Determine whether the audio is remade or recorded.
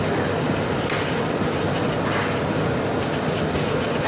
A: remade